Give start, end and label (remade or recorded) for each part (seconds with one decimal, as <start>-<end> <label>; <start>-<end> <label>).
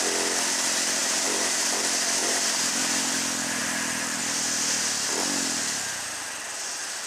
0.0-1.0 recorded; 1.0-1.8 remade; 1.8-2.2 recorded; 2.2-3.1 remade; 3.1-7.1 recorded